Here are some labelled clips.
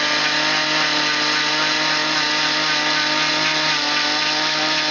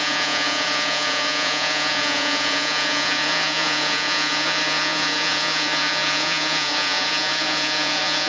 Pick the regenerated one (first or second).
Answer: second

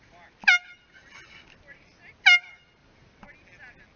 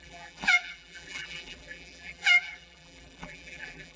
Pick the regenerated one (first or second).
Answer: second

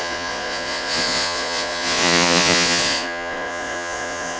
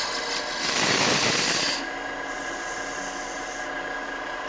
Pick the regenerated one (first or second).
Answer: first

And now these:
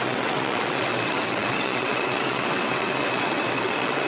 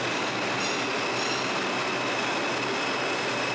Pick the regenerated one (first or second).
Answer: first